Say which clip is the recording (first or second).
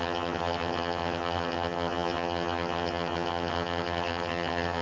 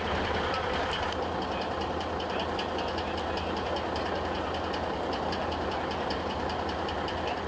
second